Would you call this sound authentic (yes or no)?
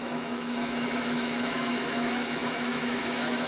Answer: no